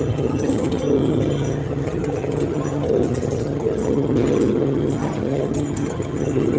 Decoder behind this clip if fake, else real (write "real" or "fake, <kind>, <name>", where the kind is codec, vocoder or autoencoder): fake, vocoder, HiFi-GAN